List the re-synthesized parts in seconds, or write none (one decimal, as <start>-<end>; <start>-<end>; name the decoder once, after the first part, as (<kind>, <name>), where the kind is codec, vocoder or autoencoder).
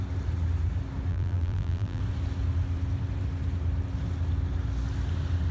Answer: 1.1-2.0 (vocoder, BigVGAN v2)